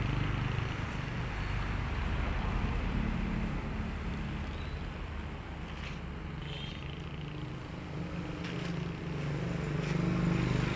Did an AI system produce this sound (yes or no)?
no